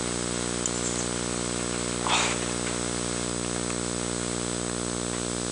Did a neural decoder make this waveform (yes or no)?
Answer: no